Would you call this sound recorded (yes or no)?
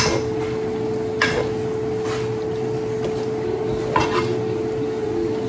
yes